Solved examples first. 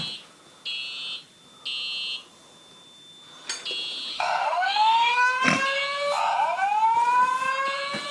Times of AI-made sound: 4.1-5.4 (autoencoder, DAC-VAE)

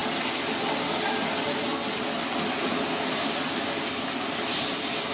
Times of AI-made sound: none

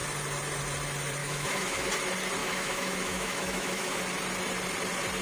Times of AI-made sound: 1.2-1.9 (autoencoder, DAC-VAE); 2.4-4.0

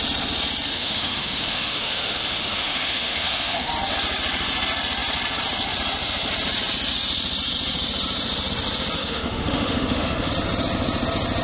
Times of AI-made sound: 0.7-3.7 (autoencoder, DAC-VAE); 9.0-10.3

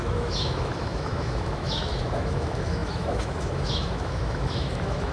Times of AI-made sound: 0.0-5.1 (autoencoder, DAC-VAE)